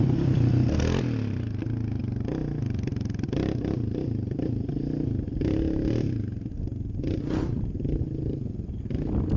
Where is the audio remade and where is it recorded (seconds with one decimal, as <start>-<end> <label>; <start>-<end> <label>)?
0.0-9.4 recorded